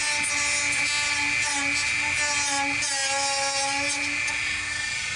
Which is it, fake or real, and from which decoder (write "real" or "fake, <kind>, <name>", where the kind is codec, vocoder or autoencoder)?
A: real